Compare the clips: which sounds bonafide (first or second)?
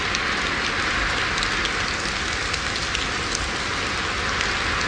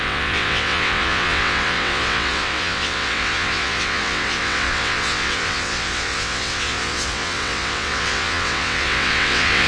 first